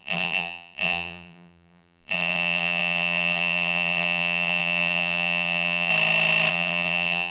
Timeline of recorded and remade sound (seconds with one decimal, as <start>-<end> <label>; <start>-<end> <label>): 0.0-5.9 remade; 5.9-6.5 recorded; 6.5-7.3 remade